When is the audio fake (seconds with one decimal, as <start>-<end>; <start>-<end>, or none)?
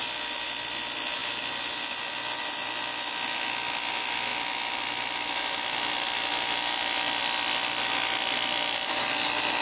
none